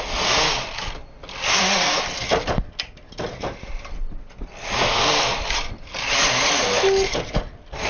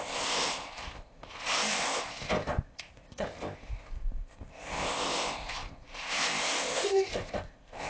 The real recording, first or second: first